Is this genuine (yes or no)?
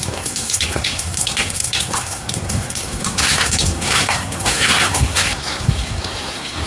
no